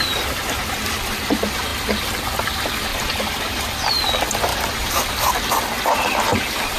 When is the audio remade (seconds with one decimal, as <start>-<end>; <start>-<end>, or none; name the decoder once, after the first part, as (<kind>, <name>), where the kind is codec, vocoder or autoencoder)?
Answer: 2.9-3.6 (vocoder, BigVGAN v2); 4.5-5.1